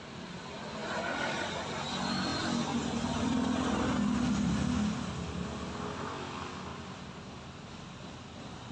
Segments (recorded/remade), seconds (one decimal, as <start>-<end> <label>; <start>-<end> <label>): 0.0-6.7 recorded; 6.7-8.7 remade